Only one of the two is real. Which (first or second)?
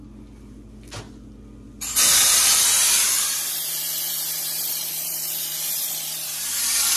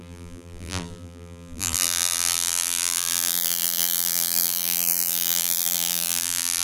first